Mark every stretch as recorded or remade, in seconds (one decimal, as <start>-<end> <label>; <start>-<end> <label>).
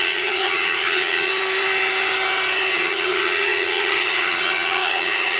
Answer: 0.0-1.3 remade; 1.3-2.7 recorded; 2.7-5.4 remade